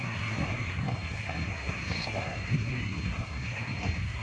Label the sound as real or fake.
fake